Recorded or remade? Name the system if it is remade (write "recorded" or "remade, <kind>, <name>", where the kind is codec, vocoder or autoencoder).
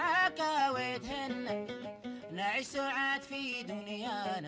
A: remade, vocoder, BigVGAN v2